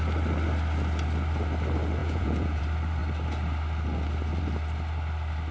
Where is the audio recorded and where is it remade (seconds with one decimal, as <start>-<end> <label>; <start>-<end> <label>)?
0.0-2.0 recorded; 2.0-2.6 remade; 2.6-5.5 recorded